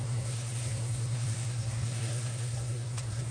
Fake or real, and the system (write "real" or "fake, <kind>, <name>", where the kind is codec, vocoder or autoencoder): fake, codec, SNAC